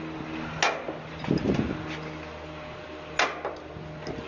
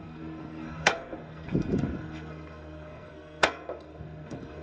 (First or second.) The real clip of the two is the first